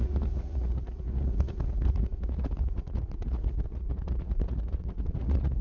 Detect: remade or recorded remade